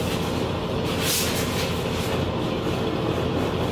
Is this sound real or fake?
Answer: real